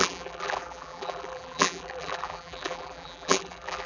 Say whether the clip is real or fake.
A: fake